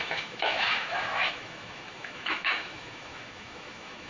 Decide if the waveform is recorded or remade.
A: remade